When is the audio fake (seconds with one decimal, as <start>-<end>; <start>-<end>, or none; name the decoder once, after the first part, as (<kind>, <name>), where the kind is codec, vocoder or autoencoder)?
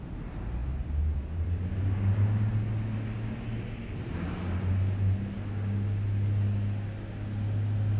none